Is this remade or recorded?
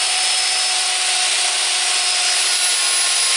recorded